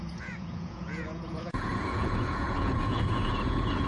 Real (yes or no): no